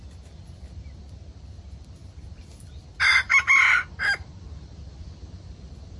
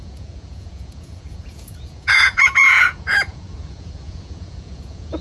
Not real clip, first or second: second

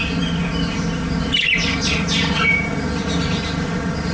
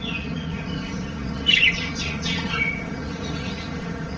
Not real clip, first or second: second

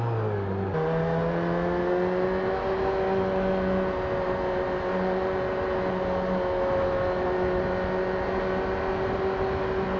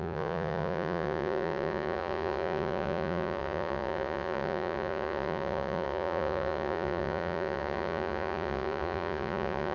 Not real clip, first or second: second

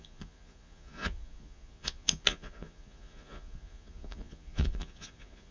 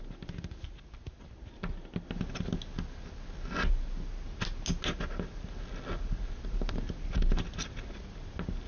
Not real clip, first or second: first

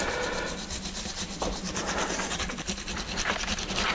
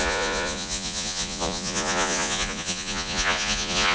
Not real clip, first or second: second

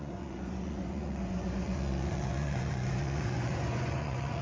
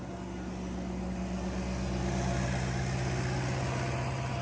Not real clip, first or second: first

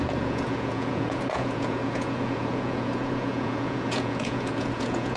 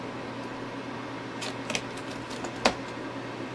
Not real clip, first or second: first